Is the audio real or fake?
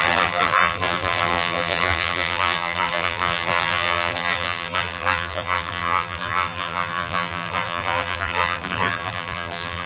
fake